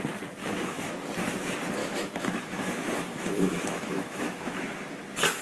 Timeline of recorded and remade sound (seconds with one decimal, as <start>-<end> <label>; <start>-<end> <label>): 0.0-0.4 recorded; 0.4-0.9 remade; 0.9-1.8 recorded; 1.8-4.5 remade; 4.5-5.4 recorded